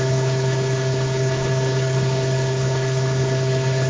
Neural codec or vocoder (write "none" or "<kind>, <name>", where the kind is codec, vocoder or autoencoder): codec, HILCodec